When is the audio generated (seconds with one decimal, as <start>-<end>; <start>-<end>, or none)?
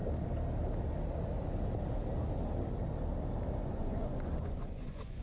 3.6-5.2